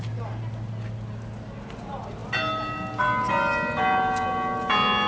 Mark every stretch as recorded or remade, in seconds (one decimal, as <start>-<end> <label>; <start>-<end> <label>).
0.0-5.1 recorded